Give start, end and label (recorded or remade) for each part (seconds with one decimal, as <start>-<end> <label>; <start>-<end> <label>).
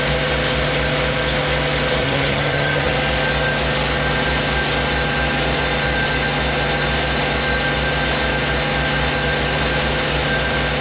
0.0-2.0 recorded; 2.0-2.9 remade; 2.9-10.8 recorded